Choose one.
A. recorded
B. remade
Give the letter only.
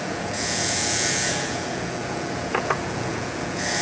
B